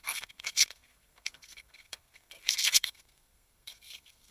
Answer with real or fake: fake